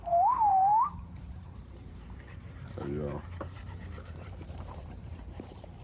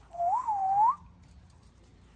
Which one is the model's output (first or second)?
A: first